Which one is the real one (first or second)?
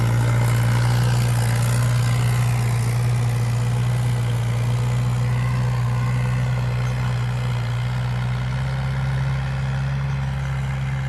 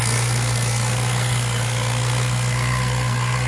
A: first